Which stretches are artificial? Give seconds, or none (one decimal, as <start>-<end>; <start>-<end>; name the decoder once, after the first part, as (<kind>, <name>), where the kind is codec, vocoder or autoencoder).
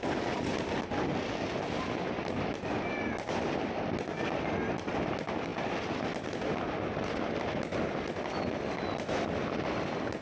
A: none